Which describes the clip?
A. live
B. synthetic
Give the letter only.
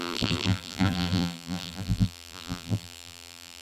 B